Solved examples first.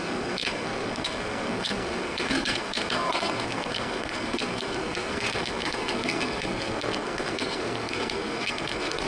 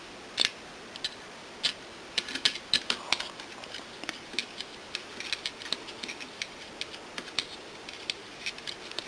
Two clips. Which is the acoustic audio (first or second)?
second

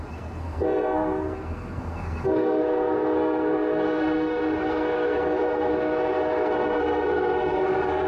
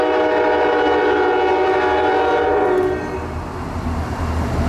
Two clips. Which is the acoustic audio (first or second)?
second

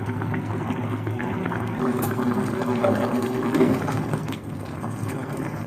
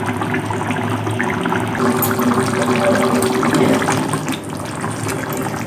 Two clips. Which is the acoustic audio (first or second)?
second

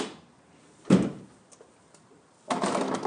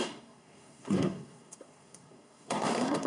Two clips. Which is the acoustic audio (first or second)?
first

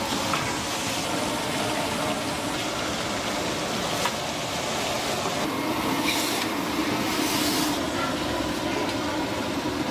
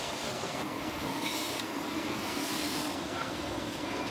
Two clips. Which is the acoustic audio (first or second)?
first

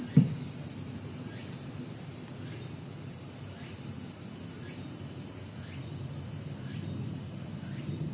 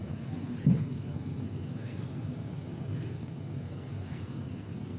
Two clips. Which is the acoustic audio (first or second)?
first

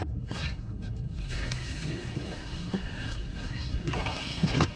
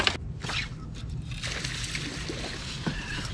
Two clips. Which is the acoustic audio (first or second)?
second